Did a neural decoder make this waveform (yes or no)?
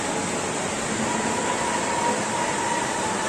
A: no